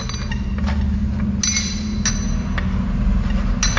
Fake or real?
real